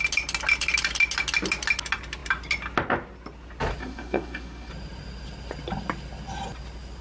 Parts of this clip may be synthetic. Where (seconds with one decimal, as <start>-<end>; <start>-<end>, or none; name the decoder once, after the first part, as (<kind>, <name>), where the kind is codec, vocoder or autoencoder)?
3.8-4.7 (codec, SNAC)